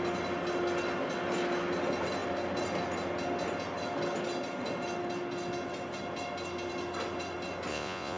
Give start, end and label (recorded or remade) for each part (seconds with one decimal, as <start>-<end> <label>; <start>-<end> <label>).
0.0-7.7 recorded; 7.7-8.2 remade